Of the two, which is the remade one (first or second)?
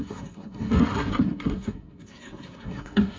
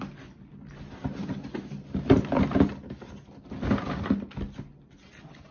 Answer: first